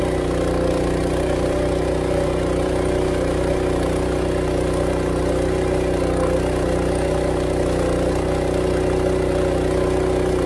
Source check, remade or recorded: recorded